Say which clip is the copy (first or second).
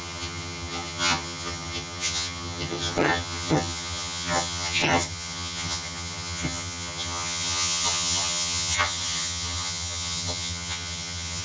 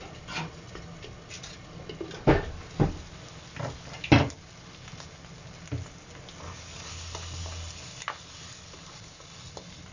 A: first